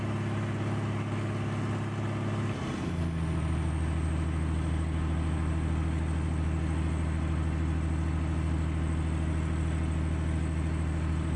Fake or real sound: real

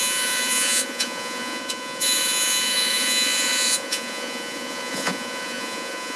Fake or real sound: fake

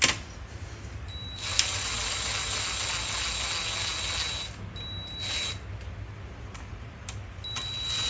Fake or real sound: real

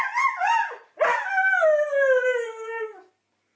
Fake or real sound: real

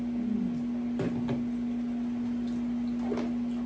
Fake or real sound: real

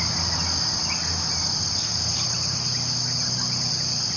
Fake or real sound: real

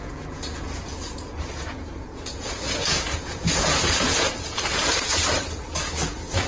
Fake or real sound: fake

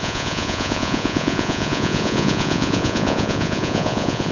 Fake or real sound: fake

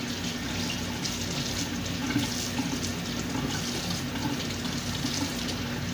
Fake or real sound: real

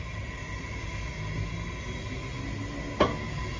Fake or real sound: real